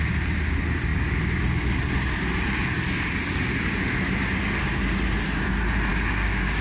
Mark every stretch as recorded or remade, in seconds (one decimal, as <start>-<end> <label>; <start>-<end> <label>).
0.0-5.9 recorded; 5.9-6.6 remade